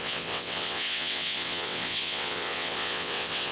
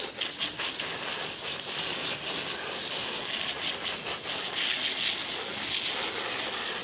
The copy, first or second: first